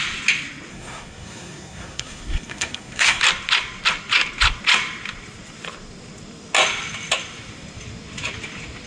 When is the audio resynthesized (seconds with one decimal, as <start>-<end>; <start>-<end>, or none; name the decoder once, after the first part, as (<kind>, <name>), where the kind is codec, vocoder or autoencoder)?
0.7-3.2 (codec, SNAC)